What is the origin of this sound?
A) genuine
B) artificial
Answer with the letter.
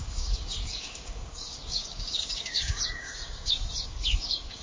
B